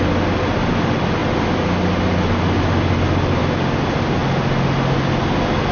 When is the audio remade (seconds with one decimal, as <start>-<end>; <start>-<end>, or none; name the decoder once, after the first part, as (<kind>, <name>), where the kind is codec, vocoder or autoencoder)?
none